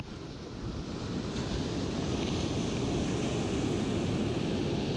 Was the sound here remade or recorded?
recorded